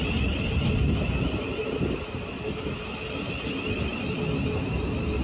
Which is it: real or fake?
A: real